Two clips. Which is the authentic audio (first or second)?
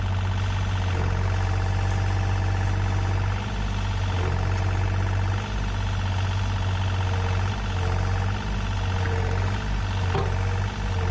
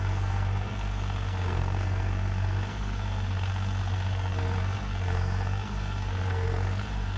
first